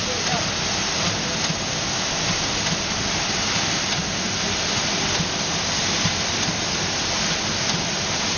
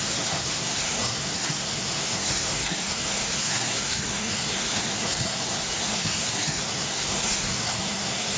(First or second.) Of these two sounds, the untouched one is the first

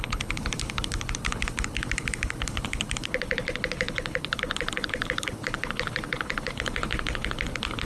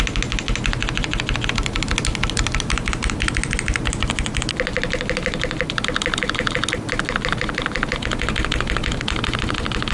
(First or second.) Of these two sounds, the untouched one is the second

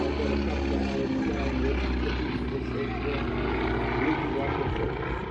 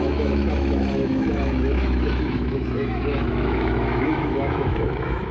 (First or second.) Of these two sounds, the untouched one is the first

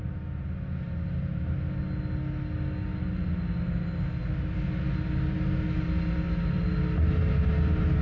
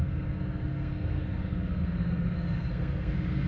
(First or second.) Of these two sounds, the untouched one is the first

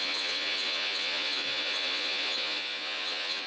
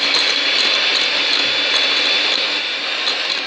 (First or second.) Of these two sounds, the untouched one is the second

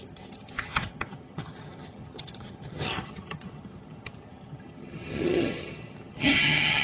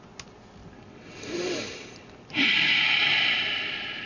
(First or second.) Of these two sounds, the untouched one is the second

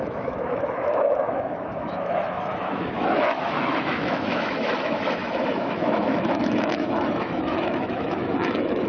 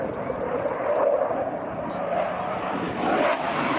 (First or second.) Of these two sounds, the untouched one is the second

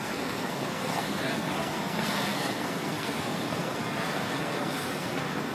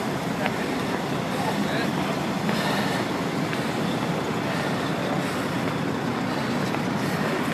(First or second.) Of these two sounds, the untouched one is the second